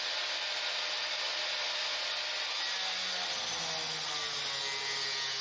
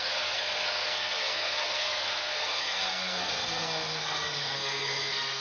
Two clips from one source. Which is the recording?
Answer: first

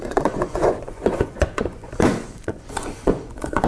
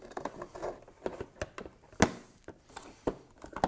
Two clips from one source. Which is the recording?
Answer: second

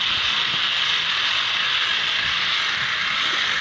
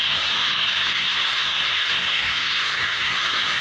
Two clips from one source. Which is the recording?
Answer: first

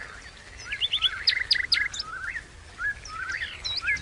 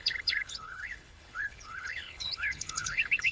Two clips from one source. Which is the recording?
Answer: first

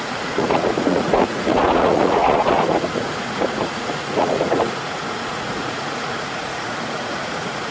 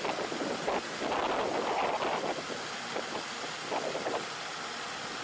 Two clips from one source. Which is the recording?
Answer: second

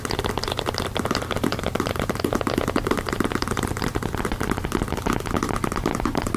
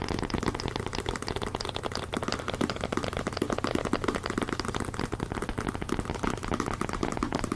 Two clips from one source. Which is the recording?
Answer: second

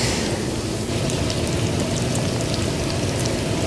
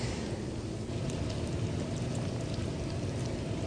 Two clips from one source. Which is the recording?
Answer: first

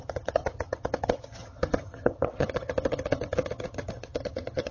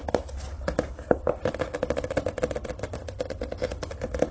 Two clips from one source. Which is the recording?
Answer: second